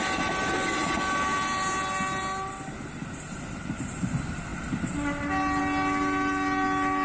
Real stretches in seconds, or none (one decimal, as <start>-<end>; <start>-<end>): 0.0-7.0